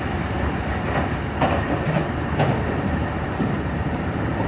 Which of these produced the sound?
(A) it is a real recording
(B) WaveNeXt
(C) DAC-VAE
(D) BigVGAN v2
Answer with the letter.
A